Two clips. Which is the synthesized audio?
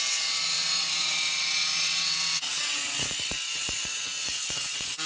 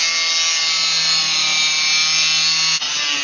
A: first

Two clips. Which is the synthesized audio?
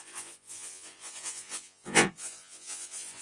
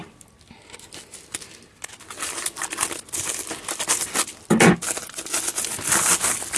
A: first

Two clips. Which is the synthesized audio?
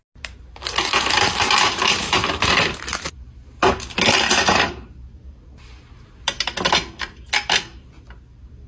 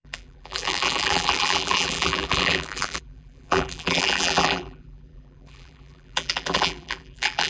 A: second